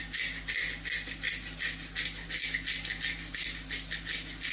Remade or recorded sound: recorded